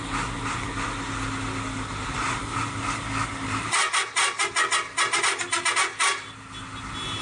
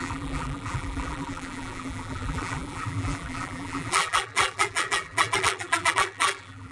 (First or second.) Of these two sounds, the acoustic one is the first